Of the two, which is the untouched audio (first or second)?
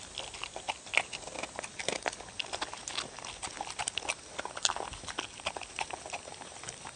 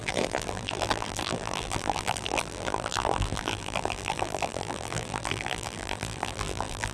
first